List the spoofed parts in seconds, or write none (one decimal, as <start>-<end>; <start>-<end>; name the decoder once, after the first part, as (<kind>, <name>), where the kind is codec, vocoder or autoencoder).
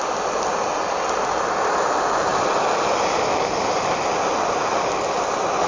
none